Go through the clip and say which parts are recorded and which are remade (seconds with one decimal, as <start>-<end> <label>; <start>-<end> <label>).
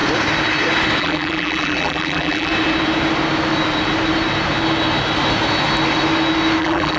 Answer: 0.0-1.0 recorded; 1.0-2.5 remade; 2.5-6.6 recorded; 6.6-7.0 remade